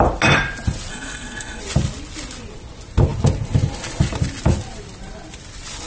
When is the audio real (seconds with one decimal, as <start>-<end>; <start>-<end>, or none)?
0.0-0.9; 1.6-5.9